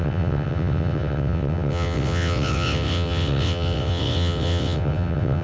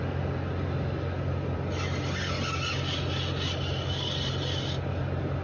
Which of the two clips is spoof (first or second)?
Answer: first